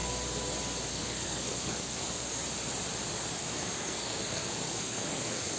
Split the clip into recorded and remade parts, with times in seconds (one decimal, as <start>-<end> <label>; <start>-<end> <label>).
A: 0.0-0.9 recorded; 0.9-2.4 remade; 2.4-3.3 recorded; 3.3-5.6 remade